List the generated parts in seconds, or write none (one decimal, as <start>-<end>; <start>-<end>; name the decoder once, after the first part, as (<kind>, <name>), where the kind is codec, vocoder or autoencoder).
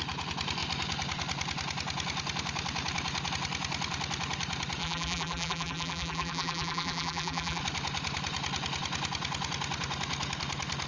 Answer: 4.8-7.6 (vocoder, BigVGAN v2)